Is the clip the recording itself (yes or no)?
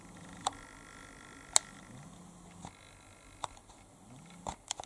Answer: yes